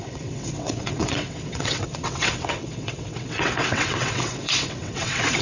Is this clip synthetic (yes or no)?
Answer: yes